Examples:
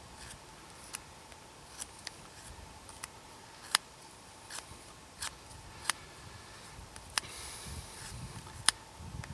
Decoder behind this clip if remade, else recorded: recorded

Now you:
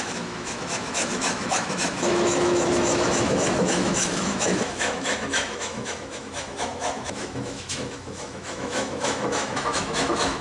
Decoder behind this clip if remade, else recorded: remade, autoencoder, DAC-VAE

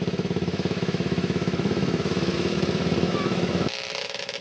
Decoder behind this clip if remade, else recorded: remade, autoencoder, DAC-VAE